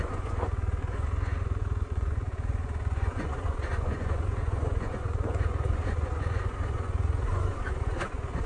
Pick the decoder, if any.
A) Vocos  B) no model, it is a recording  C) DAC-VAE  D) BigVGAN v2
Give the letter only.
A